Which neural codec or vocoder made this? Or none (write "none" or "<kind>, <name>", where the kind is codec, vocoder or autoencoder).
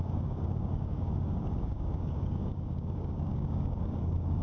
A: codec, DAC